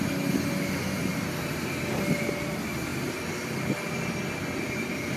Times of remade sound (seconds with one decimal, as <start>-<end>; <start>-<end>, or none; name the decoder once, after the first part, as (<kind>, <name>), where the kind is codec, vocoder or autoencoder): 1.1-1.6 (vocoder, BigVGAN v2)